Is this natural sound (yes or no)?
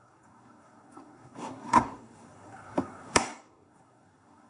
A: no